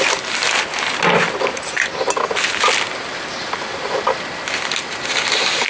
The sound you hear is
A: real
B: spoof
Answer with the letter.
A